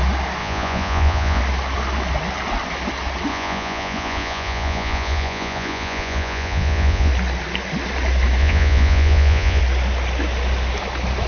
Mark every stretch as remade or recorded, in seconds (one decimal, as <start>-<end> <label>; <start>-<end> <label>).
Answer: 0.0-0.4 recorded; 0.4-1.4 remade; 1.4-3.3 recorded; 3.3-7.1 remade; 7.1-8.4 recorded; 8.4-9.6 remade; 9.6-11.3 recorded